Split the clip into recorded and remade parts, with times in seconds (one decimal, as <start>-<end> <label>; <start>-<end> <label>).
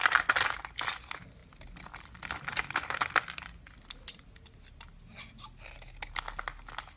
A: 0.0-7.0 recorded